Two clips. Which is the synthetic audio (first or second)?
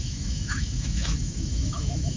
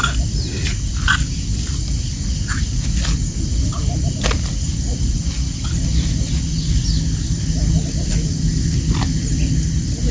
first